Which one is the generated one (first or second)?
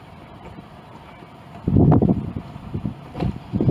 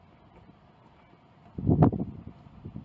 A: first